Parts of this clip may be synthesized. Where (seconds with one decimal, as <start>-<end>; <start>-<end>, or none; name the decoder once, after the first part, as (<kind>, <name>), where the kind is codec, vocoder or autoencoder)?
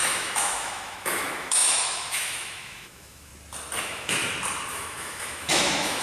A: 0.0-3.3 (autoencoder, DAC-VAE); 3.8-4.2; 4.7-6.0